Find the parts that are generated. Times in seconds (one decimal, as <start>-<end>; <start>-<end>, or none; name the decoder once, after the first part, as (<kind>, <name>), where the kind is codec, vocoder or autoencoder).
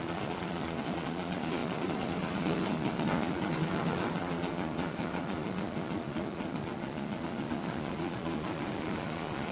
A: 0.0-9.5 (vocoder, Vocos)